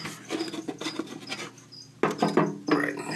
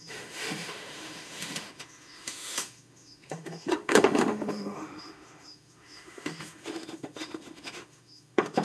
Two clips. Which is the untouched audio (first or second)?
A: first